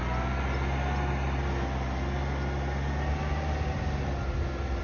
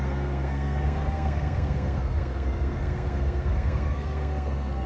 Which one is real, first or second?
first